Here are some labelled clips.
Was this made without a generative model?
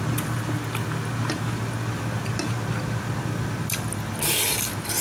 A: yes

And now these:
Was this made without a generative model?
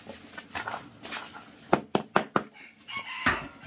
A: yes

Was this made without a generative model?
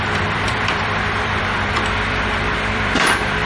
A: no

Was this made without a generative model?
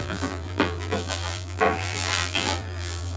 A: no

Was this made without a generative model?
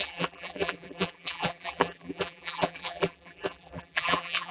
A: no